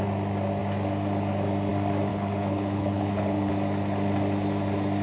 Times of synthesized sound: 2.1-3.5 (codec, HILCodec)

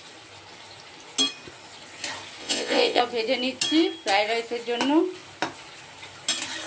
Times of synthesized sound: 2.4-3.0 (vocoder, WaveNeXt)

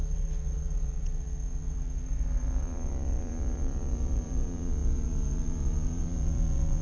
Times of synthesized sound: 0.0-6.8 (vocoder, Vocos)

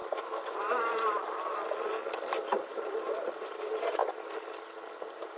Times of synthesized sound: 0.0-1.6 (vocoder, BigVGAN v2); 2.4-4.0; 4.9-5.4

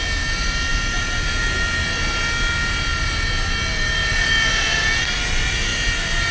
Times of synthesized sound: none

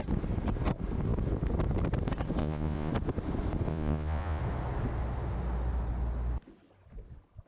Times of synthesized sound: 2.4-2.9 (vocoder, Vocos); 3.7-4.4

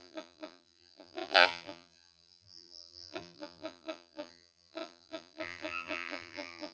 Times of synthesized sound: 0.0-6.7 (vocoder, BigVGAN v2)